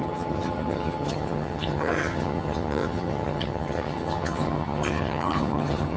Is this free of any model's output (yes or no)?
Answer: no